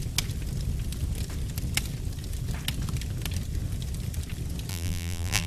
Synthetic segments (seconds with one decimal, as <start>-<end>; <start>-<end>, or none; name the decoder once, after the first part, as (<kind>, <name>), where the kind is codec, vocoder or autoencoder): 4.7-5.5 (vocoder, BigVGAN v2)